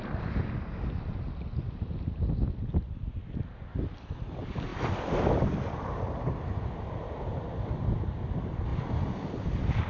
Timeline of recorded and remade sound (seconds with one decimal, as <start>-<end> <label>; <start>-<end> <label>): 0.0-9.9 recorded